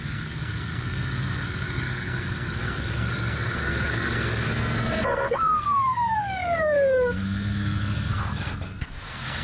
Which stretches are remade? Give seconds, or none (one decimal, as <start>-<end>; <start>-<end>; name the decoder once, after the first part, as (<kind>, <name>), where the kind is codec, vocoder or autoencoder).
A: 0.0-9.4 (codec, SNAC)